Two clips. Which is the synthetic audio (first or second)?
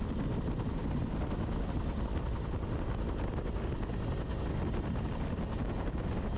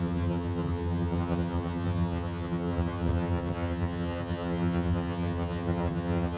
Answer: second